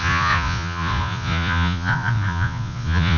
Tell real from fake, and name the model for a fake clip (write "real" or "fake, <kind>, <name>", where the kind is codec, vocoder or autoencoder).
fake, vocoder, Vocos